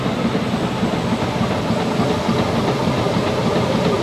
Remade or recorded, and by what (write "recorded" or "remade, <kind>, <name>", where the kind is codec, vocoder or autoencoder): recorded